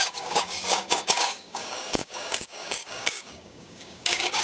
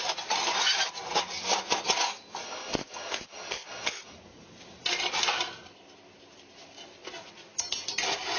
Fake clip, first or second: first